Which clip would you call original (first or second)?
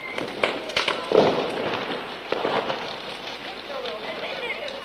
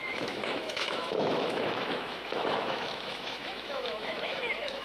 first